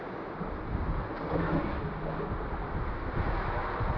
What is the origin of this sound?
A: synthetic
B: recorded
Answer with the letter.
B